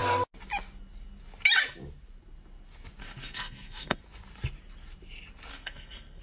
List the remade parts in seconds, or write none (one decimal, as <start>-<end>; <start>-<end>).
3.0-4.0; 5.5-6.2